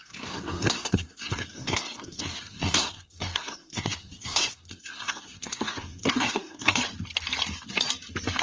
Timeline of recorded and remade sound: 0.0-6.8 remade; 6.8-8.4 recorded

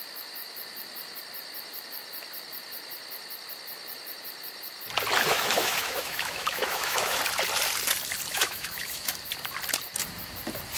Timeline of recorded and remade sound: 0.0-5.3 recorded; 5.3-7.2 remade; 7.2-8.3 recorded; 8.3-9.1 remade; 9.1-10.8 recorded

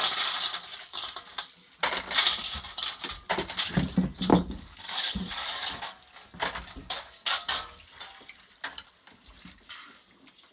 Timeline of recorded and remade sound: 0.0-4.3 recorded; 4.3-6.0 remade; 6.0-6.8 recorded; 6.8-7.8 remade; 7.8-10.5 recorded

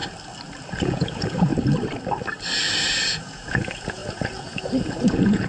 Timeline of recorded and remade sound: 0.0-0.7 recorded; 0.7-1.5 remade; 1.5-3.1 recorded; 3.1-5.5 remade

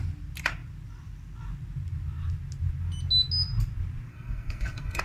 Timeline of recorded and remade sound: 0.0-4.1 recorded; 4.1-5.0 remade

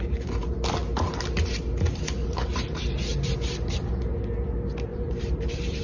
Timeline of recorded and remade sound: 0.0-2.2 recorded; 2.2-4.0 remade; 4.0-4.9 recorded; 4.9-5.8 remade

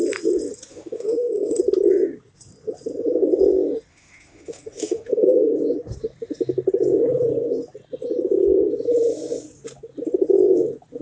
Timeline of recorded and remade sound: 0.0-0.7 recorded; 0.7-1.6 remade; 1.6-3.9 recorded; 3.9-5.5 remade; 5.5-11.0 recorded